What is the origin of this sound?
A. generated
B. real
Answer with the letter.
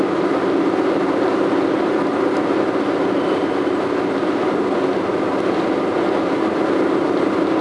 B